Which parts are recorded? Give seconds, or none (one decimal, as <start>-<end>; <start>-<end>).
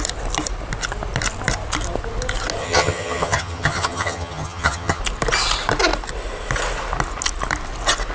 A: 0.0-2.6; 5.0-8.1